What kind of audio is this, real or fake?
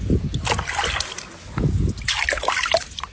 real